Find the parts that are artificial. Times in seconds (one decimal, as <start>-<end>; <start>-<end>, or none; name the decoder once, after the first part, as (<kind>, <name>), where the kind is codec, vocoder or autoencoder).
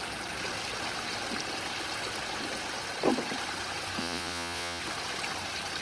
4.0-4.8 (vocoder, Vocos)